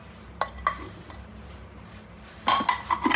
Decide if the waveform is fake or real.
real